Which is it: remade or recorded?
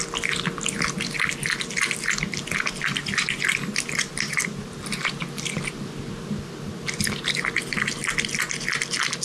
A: recorded